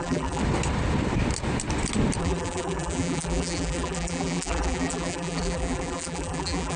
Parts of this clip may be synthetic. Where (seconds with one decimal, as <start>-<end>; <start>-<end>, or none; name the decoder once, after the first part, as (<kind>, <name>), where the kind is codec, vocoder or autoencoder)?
0.0-0.4 (vocoder, BigVGAN v2); 2.2-6.8